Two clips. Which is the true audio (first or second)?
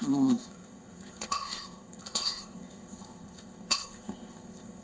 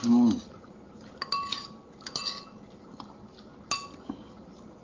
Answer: second